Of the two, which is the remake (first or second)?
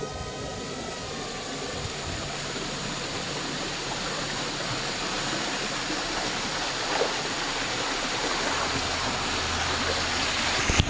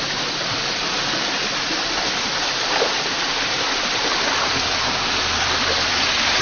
second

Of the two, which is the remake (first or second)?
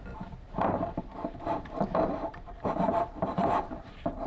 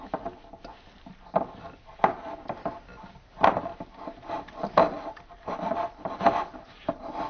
first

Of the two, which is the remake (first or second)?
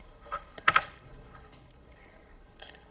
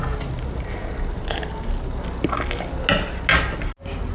first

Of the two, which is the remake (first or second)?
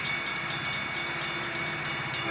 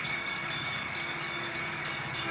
second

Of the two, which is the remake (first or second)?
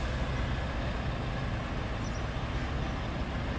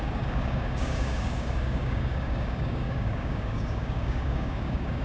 second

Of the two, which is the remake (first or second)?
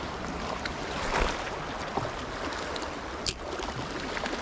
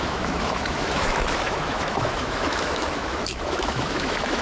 second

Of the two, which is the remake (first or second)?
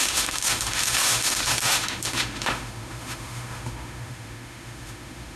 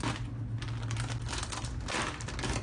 first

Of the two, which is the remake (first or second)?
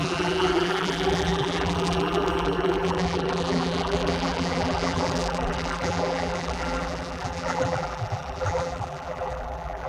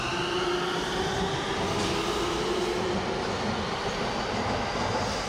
first